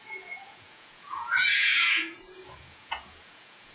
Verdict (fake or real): fake